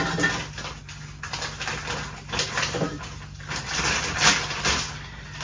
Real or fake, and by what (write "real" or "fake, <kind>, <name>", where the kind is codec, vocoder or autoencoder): real